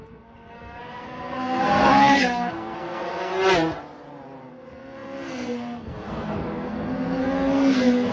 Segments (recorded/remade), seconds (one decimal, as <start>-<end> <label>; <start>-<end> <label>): 0.0-3.3 remade; 3.3-4.4 recorded; 4.4-8.1 remade